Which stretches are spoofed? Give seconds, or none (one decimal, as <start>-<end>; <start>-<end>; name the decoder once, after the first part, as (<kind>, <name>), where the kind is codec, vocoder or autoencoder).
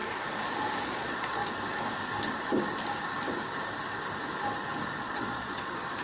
0.8-1.4 (vocoder, Vocos); 5.0-6.0